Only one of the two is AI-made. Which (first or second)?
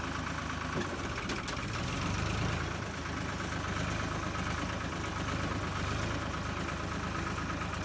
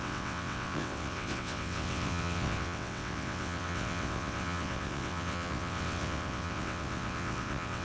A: second